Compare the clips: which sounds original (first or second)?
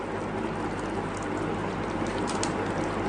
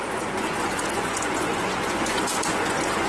first